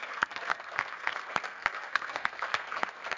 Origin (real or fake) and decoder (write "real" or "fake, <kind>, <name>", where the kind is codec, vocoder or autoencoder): fake, codec, SNAC